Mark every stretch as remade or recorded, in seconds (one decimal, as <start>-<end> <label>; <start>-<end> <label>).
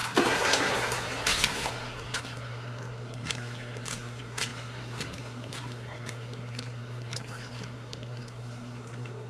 0.0-9.3 remade